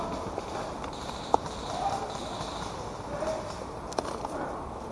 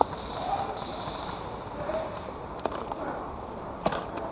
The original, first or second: first